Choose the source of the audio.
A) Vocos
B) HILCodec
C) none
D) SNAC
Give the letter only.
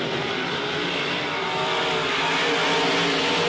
C